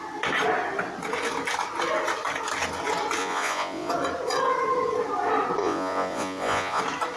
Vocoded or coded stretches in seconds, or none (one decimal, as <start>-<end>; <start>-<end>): 3.2-3.9; 5.6-6.8